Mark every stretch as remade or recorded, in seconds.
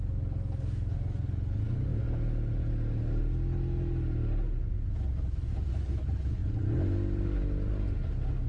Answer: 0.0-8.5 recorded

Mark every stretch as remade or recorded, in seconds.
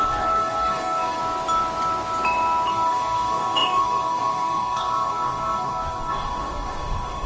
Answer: 0.0-1.2 remade; 1.2-2.7 recorded; 2.7-7.3 remade